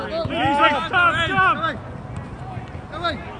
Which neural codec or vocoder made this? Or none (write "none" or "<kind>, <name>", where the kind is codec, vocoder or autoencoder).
none